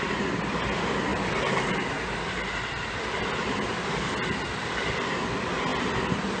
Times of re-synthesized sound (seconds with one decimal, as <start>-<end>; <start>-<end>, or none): none